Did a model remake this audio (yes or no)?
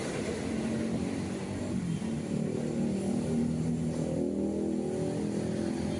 no